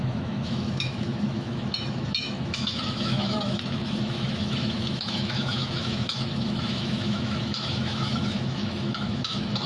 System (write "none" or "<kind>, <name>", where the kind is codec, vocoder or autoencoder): autoencoder, DAC-VAE